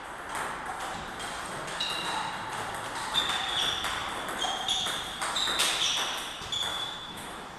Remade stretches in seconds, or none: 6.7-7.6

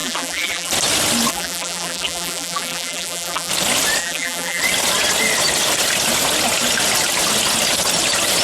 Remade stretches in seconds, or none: 0.0-0.7; 1.3-3.5; 4.0-4.6

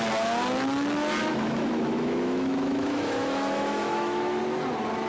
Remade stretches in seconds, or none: 1.3-4.4

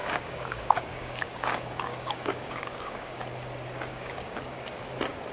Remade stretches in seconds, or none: 0.0-3.2; 3.9-4.8